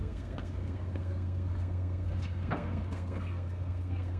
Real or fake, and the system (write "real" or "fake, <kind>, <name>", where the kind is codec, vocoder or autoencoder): fake, codec, SNAC